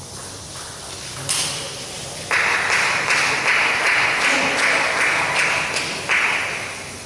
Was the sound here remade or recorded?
recorded